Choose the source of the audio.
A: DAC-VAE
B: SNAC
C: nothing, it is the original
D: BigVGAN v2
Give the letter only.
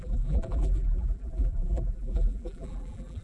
D